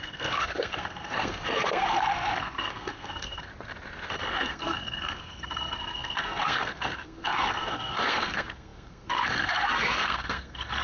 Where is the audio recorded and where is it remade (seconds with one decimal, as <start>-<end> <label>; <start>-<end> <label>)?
0.0-3.5 remade; 3.5-4.3 recorded; 4.3-10.8 remade

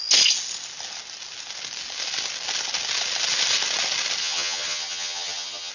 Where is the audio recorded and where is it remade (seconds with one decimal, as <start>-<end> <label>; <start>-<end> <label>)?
0.0-4.2 recorded; 4.2-5.7 remade